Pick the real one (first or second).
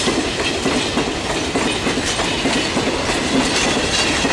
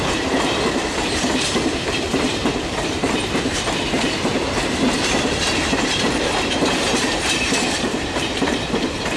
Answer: first